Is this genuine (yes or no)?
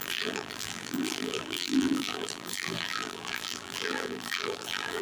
no